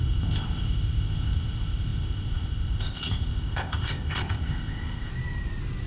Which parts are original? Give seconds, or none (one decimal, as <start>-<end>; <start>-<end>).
5.1-5.9

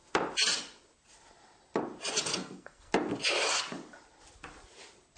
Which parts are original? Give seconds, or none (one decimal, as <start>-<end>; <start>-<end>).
0.0-2.3; 2.9-5.2

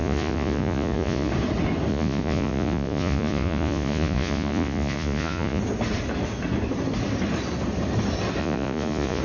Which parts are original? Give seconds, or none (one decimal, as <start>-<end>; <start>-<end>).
1.3-1.9; 5.6-8.4

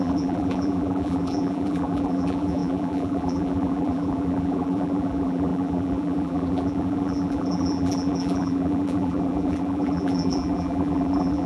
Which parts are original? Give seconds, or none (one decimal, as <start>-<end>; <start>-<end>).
none

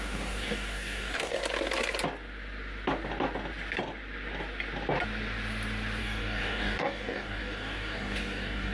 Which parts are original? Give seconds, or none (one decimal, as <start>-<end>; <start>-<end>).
1.4-6.0

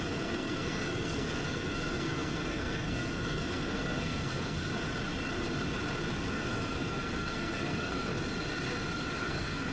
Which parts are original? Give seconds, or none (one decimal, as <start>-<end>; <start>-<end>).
4.7-6.3; 8.1-9.2

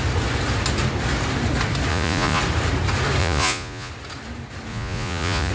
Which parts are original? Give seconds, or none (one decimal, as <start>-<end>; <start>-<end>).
0.0-1.9; 2.4-3.2; 3.9-4.7

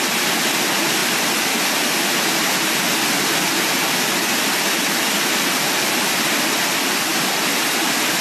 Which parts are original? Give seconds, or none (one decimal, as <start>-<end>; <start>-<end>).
0.0-8.2